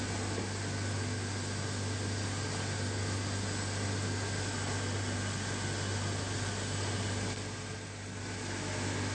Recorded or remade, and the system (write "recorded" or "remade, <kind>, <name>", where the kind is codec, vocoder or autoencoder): recorded